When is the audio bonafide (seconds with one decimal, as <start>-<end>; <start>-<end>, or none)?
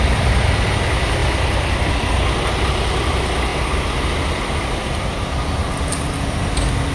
0.0-6.9